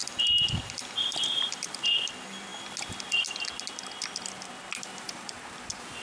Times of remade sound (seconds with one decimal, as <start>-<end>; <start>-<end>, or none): none